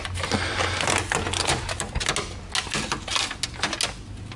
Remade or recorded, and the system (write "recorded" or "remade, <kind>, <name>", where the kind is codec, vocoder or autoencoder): recorded